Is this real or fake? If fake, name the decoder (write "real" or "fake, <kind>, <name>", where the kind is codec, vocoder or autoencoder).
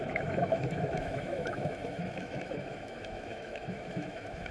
fake, autoencoder, DAC-VAE